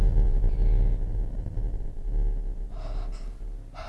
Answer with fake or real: real